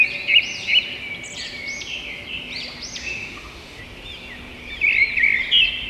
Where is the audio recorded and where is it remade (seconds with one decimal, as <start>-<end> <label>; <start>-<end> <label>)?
0.0-3.0 recorded; 3.0-3.8 remade; 3.8-5.9 recorded